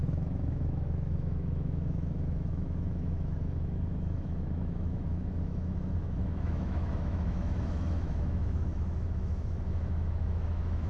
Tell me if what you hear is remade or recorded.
remade